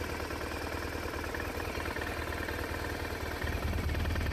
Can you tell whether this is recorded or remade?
recorded